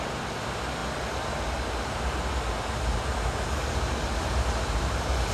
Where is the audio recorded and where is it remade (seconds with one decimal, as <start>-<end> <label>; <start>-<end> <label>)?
0.0-5.3 recorded